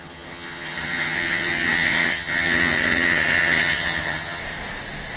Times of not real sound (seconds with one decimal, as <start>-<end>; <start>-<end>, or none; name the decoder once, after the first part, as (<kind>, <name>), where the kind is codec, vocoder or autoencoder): 0.0-4.4 (vocoder, HiFi-GAN)